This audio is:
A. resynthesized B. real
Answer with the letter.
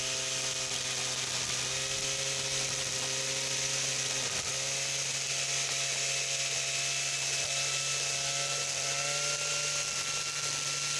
B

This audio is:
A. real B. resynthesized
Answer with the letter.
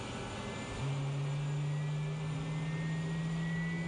A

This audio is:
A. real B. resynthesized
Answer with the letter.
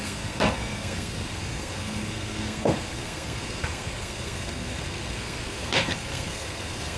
B